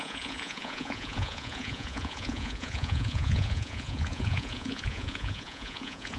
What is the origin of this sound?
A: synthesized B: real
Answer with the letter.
A